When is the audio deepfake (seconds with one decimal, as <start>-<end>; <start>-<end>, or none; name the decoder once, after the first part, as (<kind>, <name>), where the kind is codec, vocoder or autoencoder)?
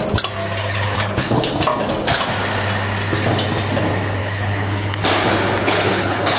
0.6-1.5 (codec, HILCodec); 4.2-5.0; 5.6-6.4